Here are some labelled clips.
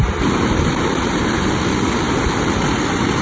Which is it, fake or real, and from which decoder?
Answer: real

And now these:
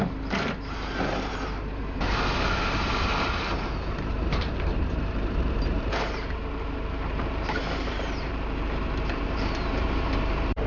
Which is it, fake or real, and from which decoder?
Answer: fake, vocoder, BigVGAN v2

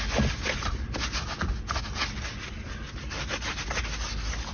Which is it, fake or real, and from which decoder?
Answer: real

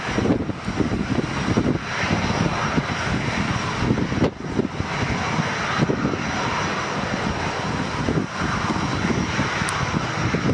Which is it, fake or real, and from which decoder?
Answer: real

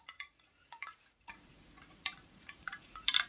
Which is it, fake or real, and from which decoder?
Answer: fake, vocoder, Vocos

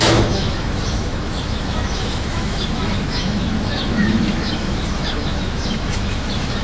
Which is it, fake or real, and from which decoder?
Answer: fake, autoencoder, DAC-VAE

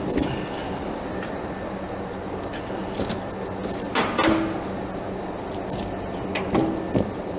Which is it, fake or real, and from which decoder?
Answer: real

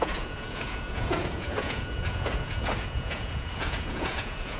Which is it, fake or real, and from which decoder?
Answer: fake, vocoder, Vocos